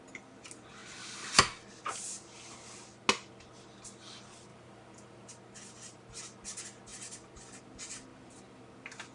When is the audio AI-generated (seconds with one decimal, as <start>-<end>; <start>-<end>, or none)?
4.5-5.3; 8.1-8.6